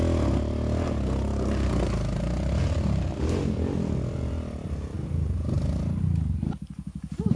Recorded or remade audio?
recorded